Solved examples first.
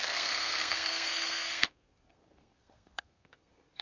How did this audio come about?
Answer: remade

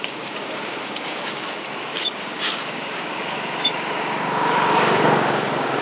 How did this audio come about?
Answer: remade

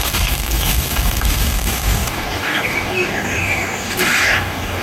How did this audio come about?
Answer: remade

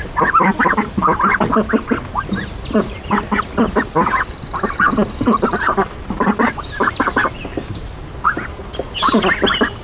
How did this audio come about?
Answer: recorded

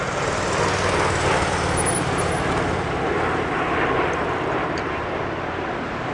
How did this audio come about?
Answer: recorded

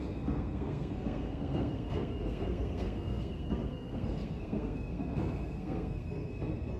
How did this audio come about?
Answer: remade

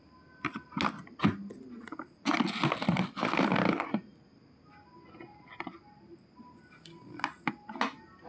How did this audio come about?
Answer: recorded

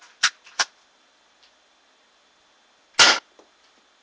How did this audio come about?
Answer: recorded